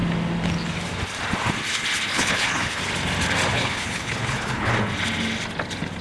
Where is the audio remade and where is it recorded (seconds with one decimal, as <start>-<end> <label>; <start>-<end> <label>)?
0.0-2.1 recorded; 2.1-2.8 remade; 2.8-3.5 recorded; 3.5-4.7 remade; 4.7-6.0 recorded